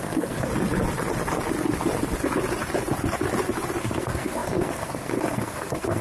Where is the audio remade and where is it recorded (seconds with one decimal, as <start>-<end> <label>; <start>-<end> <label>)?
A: 0.0-0.5 remade; 0.5-3.8 recorded; 3.8-6.0 remade